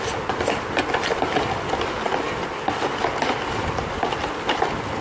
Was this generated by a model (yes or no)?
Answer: no